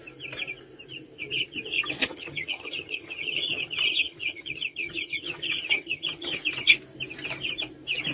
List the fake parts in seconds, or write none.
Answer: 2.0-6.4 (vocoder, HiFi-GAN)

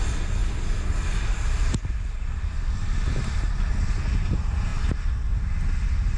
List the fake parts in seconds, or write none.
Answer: none

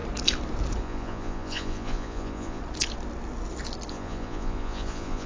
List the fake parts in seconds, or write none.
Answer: 0.8-2.6 (vocoder, Vocos); 3.9-5.3

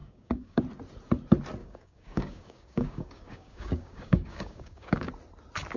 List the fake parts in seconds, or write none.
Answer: 0.0-0.6 (codec, DAC); 1.6-5.1

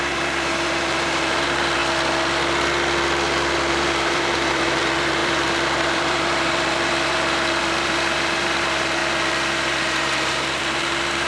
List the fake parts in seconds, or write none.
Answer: 0.0-1.8 (vocoder, BigVGAN v2); 3.7-11.3

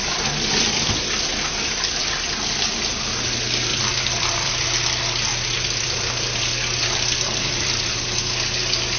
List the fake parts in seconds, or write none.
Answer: 0.0-0.9 (vocoder, BigVGAN v2); 3.7-4.6; 5.3-8.1

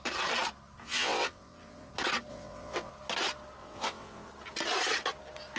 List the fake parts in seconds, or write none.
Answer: 0.8-1.9 (vocoder, WaveNeXt); 2.3-2.9; 3.6-4.3